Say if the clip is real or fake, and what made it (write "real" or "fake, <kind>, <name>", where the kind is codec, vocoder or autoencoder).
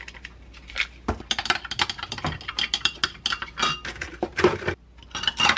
real